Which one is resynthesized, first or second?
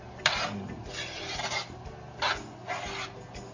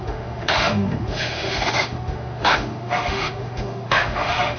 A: second